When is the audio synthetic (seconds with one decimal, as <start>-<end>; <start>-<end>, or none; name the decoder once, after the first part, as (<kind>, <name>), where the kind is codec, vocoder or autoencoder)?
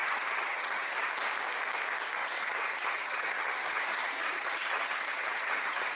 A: 0.0-1.1 (vocoder, HiFi-GAN); 2.2-5.9